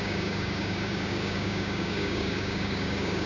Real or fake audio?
fake